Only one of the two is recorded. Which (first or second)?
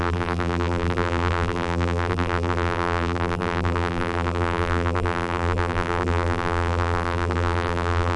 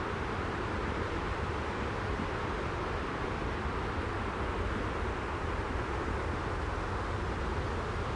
second